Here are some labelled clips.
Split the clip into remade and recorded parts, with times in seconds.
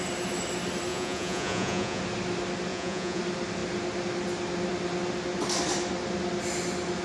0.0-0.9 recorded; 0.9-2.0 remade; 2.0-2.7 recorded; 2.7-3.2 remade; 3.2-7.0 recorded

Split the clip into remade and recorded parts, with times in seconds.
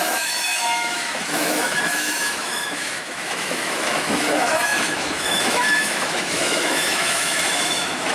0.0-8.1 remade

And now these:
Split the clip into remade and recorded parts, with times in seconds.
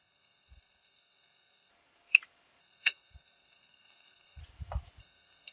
0.0-1.7 remade; 1.7-2.6 recorded; 2.6-4.4 remade; 4.4-5.0 recorded; 5.0-5.5 remade